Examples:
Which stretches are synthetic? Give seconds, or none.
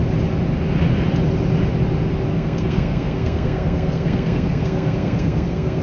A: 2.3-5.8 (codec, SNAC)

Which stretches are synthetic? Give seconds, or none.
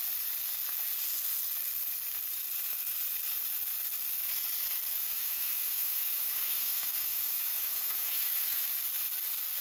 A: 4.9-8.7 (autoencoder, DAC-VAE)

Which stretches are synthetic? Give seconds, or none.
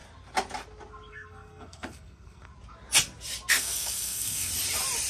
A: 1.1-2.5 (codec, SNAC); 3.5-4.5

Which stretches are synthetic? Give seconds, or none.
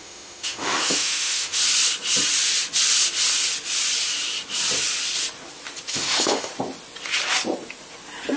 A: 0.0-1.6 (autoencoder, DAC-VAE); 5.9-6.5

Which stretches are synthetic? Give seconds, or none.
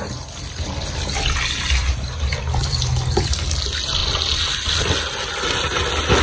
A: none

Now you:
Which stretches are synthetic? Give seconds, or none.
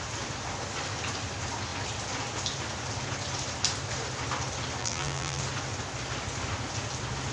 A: 4.8-5.4 (vocoder, BigVGAN v2)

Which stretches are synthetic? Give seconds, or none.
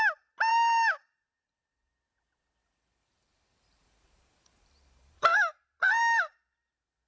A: 0.5-1.9 (vocoder, BigVGAN v2); 2.6-7.1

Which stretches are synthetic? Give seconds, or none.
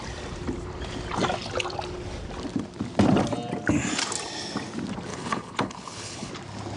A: 5.1-6.3 (codec, HILCodec)